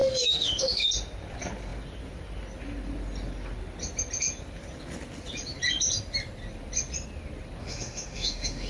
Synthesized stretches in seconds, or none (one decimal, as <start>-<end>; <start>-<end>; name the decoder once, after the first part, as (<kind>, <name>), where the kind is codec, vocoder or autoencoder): 0.0-0.9 (autoencoder, DAC-VAE); 7.6-8.7